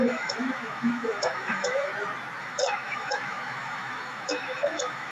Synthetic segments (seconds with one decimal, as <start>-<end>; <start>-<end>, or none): 0.0-1.9; 2.4-5.1